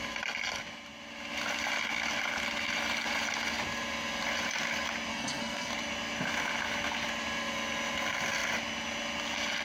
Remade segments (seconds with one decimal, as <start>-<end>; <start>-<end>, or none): 5.1-5.7